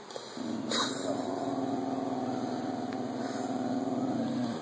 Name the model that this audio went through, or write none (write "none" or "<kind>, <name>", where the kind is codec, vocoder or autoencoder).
none